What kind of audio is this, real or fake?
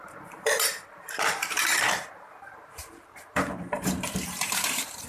fake